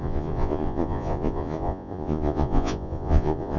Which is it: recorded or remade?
remade